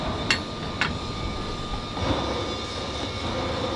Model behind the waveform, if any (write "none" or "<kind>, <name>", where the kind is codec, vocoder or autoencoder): none